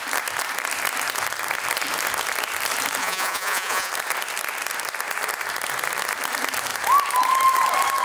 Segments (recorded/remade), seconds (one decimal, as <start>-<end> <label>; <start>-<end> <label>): 0.0-3.0 recorded; 3.0-3.9 remade; 3.9-8.0 recorded

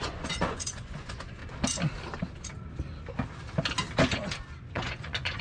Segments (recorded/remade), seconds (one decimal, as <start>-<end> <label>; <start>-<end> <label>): 0.0-1.4 remade; 1.4-4.6 recorded; 4.6-5.4 remade

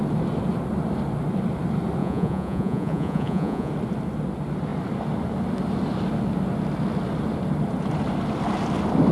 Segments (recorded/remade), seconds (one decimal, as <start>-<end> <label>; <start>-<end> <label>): 0.0-2.0 recorded; 2.0-3.7 remade; 3.7-9.1 recorded

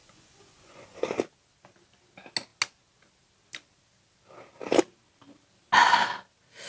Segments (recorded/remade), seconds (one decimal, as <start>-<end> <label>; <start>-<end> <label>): 0.0-1.2 remade; 1.2-6.7 recorded